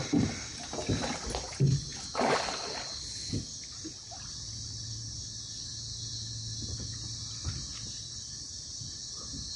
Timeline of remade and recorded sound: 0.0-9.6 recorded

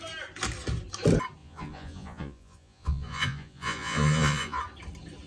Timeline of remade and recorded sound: 0.0-1.4 recorded; 1.4-4.6 remade; 4.6-5.3 recorded

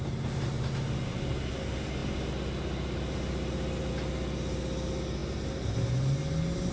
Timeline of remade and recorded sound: 0.0-6.7 recorded

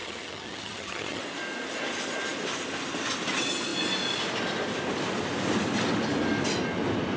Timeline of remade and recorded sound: 0.0-1.2 remade; 1.2-7.2 recorded